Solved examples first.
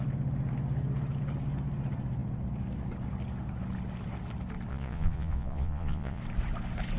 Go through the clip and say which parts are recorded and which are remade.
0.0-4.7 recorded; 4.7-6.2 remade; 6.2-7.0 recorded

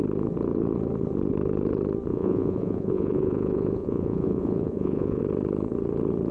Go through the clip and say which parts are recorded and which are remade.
0.0-2.1 recorded; 2.1-5.2 remade; 5.2-6.3 recorded

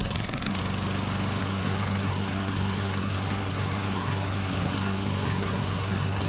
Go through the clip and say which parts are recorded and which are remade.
0.0-0.6 remade; 0.6-1.4 recorded; 1.4-6.3 remade

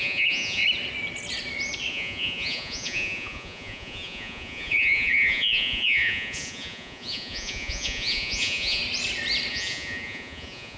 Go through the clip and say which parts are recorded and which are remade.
0.0-0.6 remade; 0.6-1.9 recorded; 1.9-8.8 remade; 8.8-9.5 recorded; 9.5-10.8 remade